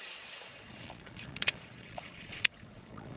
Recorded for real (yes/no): no